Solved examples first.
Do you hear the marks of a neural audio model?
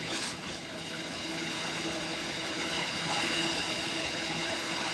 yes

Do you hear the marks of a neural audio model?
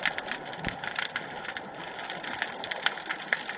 no